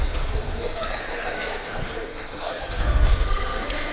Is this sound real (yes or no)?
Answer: no